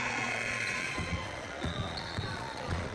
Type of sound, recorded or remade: remade